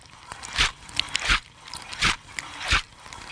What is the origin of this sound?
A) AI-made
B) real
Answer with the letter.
B